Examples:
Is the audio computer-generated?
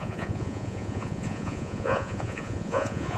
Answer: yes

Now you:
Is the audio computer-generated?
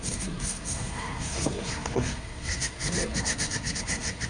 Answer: yes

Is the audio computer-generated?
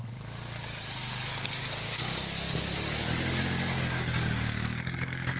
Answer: yes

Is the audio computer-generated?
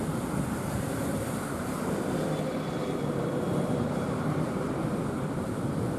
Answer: yes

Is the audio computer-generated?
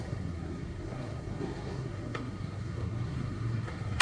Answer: yes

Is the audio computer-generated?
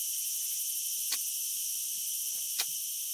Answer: no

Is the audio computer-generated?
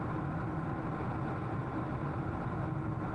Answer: no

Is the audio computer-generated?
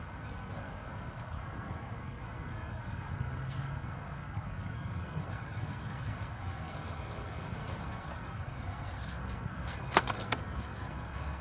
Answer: yes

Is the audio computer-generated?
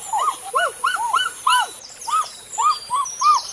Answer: yes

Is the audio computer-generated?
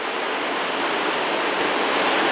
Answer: no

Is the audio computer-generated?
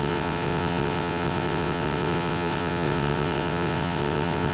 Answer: yes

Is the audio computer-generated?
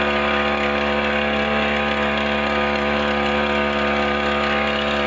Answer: no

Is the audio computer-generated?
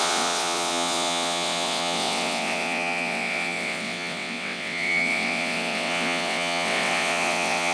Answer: yes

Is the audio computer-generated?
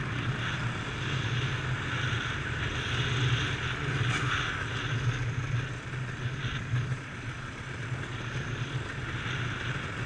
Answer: no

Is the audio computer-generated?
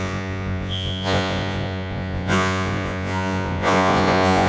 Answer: yes